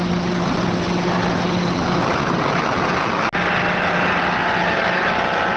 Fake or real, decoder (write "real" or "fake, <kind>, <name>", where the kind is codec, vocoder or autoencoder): real